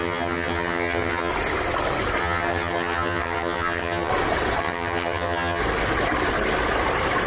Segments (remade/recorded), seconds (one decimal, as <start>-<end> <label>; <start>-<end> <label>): 0.0-1.3 remade; 1.3-2.2 recorded; 2.2-4.1 remade; 4.1-4.6 recorded; 4.6-5.6 remade; 5.6-7.3 recorded